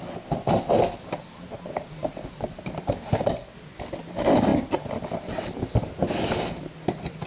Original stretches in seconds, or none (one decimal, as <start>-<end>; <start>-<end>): 0.0-4.5; 6.0-7.3

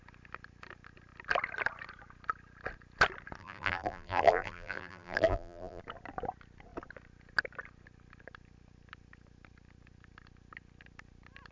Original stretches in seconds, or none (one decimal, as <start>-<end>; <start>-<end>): 0.0-3.4; 5.8-11.5

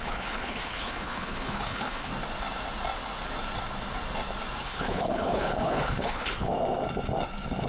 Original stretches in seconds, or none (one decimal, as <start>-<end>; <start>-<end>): 2.1-4.6; 6.5-7.7

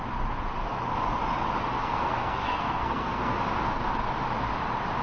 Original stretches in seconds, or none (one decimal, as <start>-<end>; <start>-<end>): 0.0-1.8; 3.4-5.0

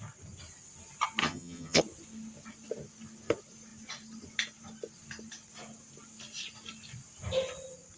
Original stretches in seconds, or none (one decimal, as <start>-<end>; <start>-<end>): 0.0-1.2; 1.8-8.0

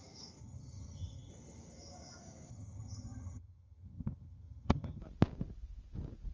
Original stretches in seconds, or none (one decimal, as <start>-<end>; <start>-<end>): 0.0-0.4; 1.3-2.5; 5.0-6.3

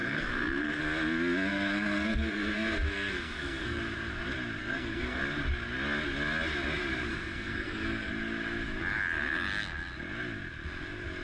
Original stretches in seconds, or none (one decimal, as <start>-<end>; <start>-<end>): 0.8-1.5; 3.8-4.6; 5.2-7.1; 8.1-11.2

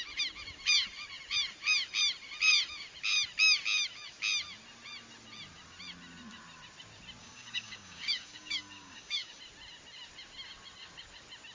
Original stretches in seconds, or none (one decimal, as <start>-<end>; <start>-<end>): 0.0-7.2; 9.4-11.5